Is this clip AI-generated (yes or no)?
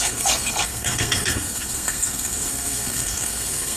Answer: yes